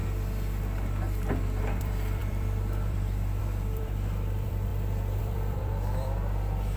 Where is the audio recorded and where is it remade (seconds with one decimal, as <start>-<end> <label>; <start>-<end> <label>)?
0.0-1.6 recorded; 1.6-4.7 remade; 4.7-5.2 recorded; 5.2-6.8 remade